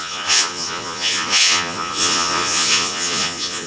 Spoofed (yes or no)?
yes